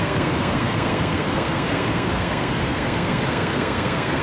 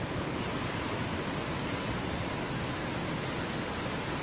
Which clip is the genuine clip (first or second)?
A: second